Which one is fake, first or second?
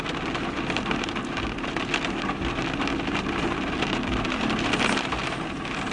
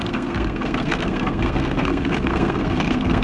second